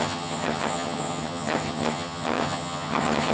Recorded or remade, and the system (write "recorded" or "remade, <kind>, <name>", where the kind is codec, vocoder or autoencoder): remade, vocoder, HiFi-GAN